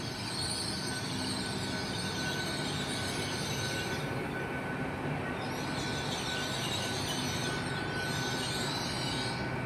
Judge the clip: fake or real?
real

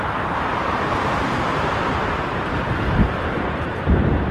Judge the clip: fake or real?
fake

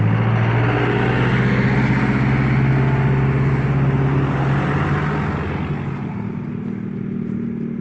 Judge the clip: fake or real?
real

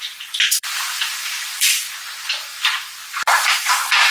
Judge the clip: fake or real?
fake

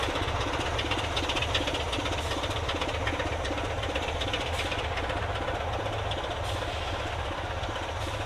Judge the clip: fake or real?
real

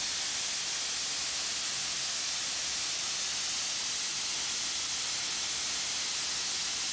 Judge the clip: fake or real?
real